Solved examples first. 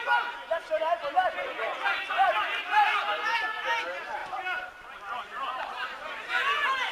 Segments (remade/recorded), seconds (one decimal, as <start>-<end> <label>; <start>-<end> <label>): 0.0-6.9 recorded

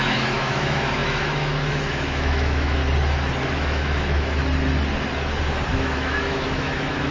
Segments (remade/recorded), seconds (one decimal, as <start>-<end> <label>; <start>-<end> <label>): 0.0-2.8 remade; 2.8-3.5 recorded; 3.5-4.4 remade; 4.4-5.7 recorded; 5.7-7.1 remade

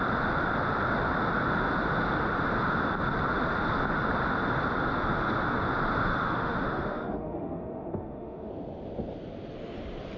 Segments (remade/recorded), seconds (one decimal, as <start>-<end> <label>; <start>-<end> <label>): 0.0-6.1 recorded; 6.1-8.5 remade; 8.5-10.2 recorded

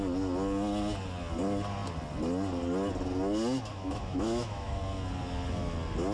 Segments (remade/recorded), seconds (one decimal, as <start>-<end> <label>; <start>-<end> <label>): 0.0-3.7 recorded; 3.7-4.8 remade; 4.8-6.1 recorded

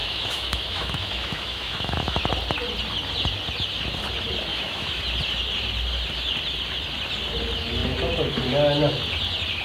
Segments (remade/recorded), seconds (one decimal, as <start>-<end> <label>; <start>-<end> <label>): 0.0-2.2 remade; 2.2-4.5 recorded; 4.5-5.0 remade; 5.0-9.6 recorded